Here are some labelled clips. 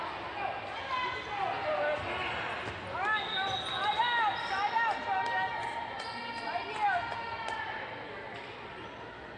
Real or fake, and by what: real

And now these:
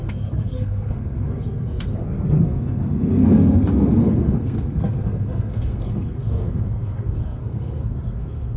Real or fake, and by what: fake, codec, SNAC